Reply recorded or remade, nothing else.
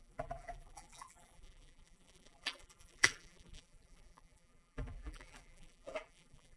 remade